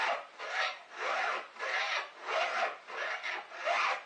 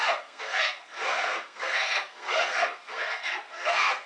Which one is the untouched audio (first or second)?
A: first